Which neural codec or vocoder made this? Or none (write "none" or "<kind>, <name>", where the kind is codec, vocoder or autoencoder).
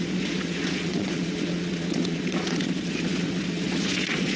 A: vocoder, Vocos